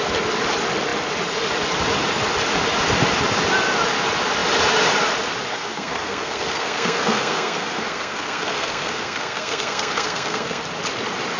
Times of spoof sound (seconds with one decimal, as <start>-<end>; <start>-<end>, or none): 5.5-10.6